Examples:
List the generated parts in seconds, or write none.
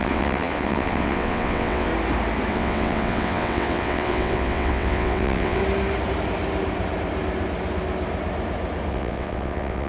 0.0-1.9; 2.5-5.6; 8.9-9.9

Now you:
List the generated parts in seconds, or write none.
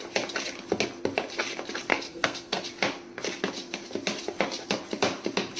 1.9-2.6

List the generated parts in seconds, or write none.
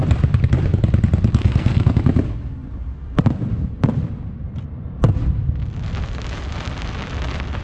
1.4-2.0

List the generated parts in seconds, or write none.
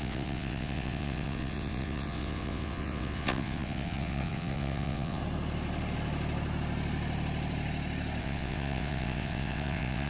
0.0-5.2; 8.2-10.1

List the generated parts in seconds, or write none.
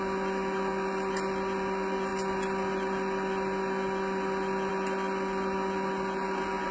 none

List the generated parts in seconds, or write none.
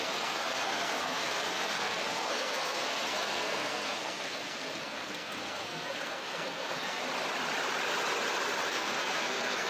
0.0-7.0; 8.7-9.7